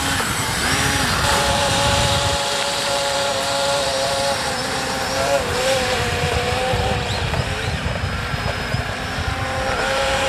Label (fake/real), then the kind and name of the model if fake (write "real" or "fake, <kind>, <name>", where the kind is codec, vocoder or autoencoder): fake, vocoder, BigVGAN v2